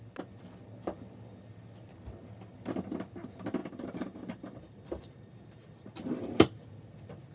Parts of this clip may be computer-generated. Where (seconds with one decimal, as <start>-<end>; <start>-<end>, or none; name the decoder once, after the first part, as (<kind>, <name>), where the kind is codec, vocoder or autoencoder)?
3.6-5.9 (vocoder, BigVGAN v2)